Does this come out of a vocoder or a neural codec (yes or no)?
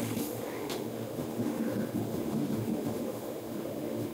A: yes